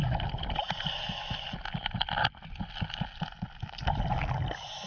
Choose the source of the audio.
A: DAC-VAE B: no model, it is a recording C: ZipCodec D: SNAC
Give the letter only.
B